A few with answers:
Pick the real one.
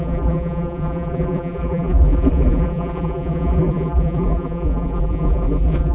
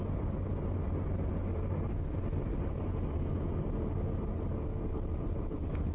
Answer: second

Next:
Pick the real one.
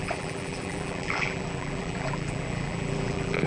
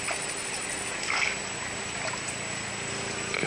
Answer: second